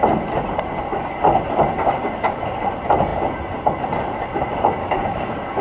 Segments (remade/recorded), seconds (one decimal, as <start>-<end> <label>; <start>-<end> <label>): 0.0-4.8 recorded; 4.8-5.6 remade